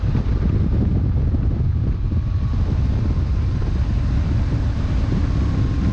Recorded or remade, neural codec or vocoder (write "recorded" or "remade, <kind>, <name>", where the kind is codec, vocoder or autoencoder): recorded